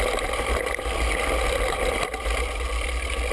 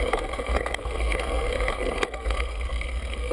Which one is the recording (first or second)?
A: first